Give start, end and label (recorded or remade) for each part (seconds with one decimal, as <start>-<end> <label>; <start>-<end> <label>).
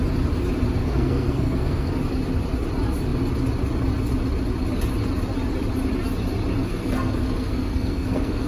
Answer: 0.0-0.8 recorded; 0.8-1.9 remade; 1.9-6.6 recorded; 6.6-8.5 remade